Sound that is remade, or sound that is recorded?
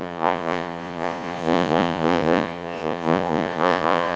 remade